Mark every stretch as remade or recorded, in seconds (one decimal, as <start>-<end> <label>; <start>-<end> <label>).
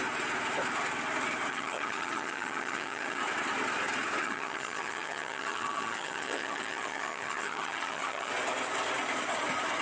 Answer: 0.0-1.5 recorded; 1.5-3.2 remade; 3.2-4.2 recorded; 4.2-8.3 remade; 8.3-9.8 recorded